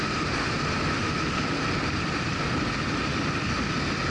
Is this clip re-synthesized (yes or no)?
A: no